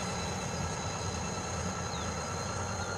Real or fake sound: real